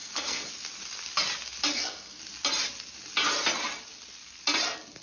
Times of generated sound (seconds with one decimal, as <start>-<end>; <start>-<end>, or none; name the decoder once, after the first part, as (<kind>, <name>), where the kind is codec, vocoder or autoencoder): 0.0-0.5 (codec, SNAC); 1.7-2.2